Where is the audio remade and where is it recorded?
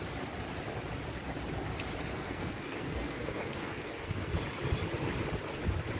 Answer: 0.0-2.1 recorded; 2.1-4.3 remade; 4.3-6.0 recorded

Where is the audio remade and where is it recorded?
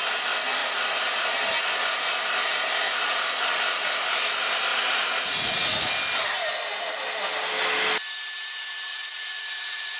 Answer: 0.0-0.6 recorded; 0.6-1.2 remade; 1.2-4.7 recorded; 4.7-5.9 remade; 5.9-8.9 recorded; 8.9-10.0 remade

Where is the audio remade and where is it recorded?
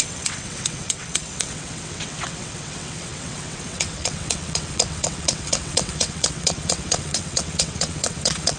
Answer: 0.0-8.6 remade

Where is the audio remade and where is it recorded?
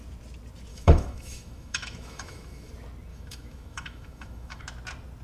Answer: 0.0-0.7 recorded; 0.7-2.7 remade; 2.7-3.1 recorded; 3.1-4.6 remade; 4.6-5.2 recorded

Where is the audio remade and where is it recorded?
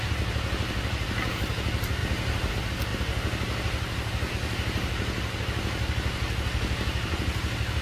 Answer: 0.0-7.8 recorded